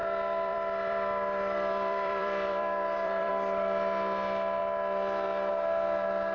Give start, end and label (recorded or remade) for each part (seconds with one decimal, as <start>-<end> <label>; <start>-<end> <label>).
0.0-3.3 remade; 3.3-6.3 recorded